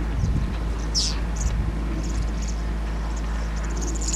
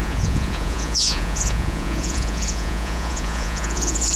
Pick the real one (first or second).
first